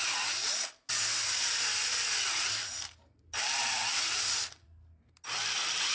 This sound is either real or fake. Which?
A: real